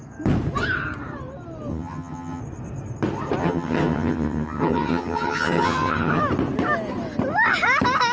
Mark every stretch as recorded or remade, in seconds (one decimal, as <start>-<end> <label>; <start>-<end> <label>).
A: 0.0-1.7 recorded; 1.7-2.4 remade; 2.4-3.4 recorded; 3.4-6.2 remade; 6.2-8.1 recorded